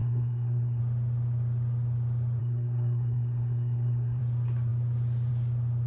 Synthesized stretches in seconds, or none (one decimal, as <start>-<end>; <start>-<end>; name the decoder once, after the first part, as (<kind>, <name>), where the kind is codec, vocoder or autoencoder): 0.0-0.8 (codec, SNAC); 2.4-4.2